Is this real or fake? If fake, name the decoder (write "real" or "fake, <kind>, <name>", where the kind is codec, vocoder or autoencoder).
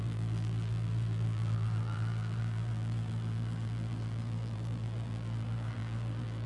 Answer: fake, vocoder, BigVGAN v2